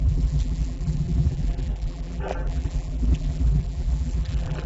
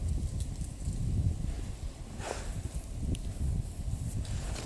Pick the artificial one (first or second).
first